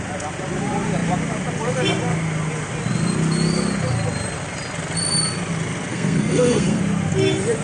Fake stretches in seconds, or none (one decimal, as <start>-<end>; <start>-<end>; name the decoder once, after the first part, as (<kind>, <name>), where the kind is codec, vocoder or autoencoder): 5.9-6.8 (codec, SNAC)